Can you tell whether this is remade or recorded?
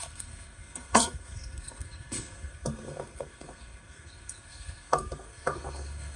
remade